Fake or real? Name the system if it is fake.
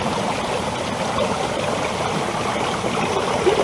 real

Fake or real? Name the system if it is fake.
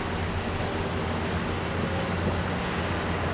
real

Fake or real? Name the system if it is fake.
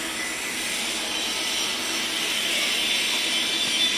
real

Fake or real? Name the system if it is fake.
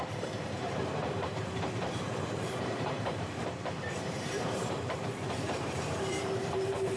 fake, vocoder, BigVGAN v2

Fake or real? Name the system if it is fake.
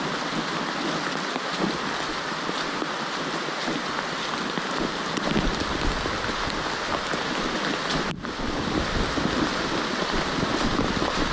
real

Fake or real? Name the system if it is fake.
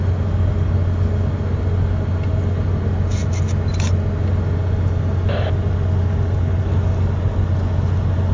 real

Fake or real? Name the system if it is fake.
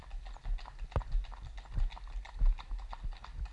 real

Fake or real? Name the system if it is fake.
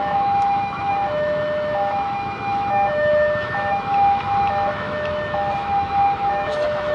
fake, autoencoder, DAC-VAE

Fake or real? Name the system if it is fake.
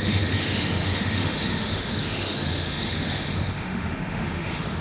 fake, autoencoder, DAC-VAE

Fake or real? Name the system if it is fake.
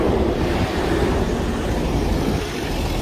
real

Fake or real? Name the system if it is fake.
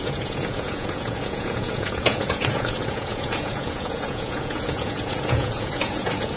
fake, vocoder, Vocos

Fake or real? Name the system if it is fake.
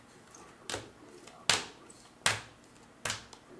real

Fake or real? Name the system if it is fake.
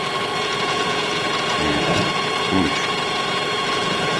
fake, vocoder, Vocos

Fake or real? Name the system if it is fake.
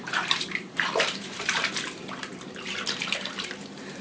fake, vocoder, BigVGAN v2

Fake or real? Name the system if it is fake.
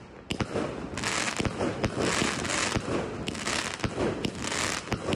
real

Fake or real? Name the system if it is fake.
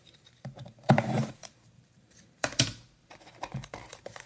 fake, vocoder, BigVGAN v2